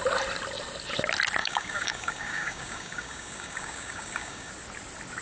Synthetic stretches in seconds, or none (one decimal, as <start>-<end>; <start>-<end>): 1.4-4.5

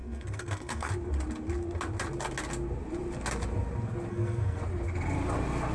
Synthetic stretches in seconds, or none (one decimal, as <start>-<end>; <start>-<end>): 0.0-0.9; 4.1-4.6

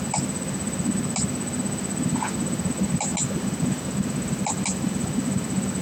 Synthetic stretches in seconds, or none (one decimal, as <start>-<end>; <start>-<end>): none

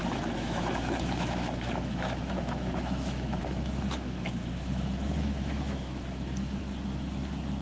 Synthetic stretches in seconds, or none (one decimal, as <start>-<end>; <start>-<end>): 0.0-6.6

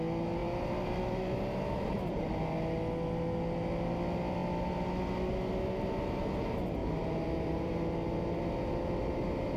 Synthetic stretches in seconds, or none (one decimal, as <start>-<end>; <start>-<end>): 0.4-2.2; 6.8-7.7

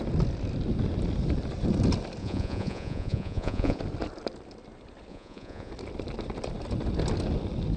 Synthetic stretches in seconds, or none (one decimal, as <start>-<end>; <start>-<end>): 2.2-3.8; 5.1-5.7

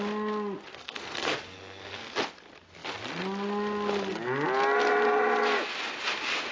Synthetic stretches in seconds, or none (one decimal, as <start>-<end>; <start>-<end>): 0.7-2.1

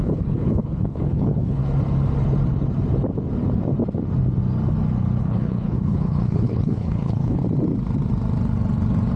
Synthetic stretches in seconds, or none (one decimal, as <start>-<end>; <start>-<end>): 0.0-1.6; 5.2-7.4